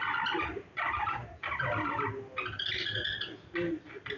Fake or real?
real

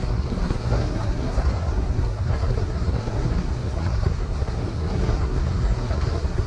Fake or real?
fake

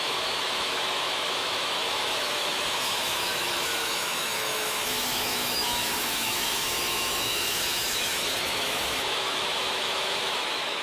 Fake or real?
fake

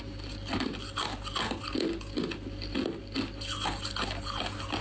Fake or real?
real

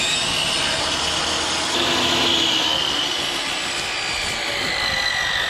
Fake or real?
real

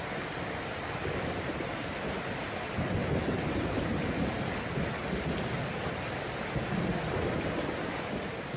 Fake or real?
real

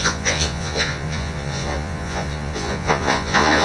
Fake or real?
fake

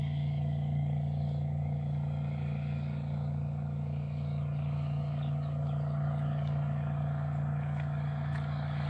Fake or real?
fake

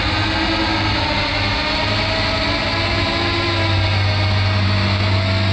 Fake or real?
real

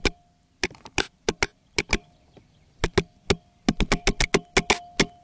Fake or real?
real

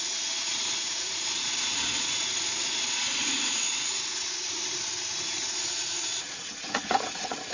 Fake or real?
fake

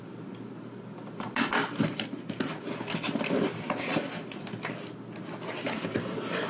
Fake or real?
real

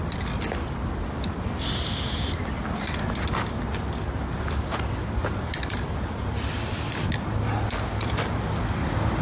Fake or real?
real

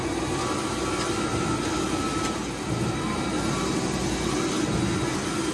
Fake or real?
real